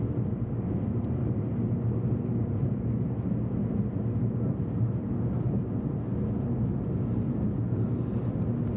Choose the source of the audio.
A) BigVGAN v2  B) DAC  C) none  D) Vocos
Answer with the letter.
C